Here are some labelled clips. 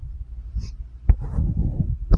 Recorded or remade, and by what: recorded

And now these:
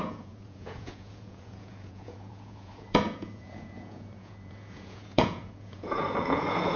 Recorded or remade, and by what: remade, vocoder, Vocos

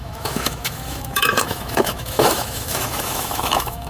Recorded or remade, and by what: remade, autoencoder, DAC-VAE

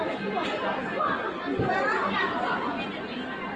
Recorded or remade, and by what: recorded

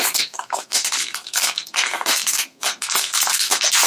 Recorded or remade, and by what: remade, codec, SNAC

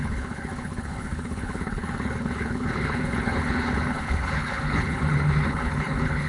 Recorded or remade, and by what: remade, codec, HILCodec